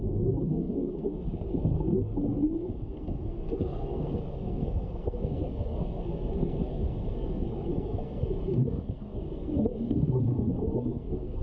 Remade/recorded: remade